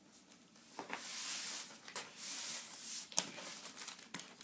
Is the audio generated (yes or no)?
no